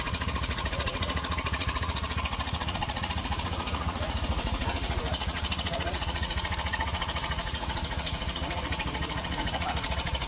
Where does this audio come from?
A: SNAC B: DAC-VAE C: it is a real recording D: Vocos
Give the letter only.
D